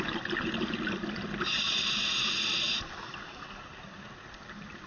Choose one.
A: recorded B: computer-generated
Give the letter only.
A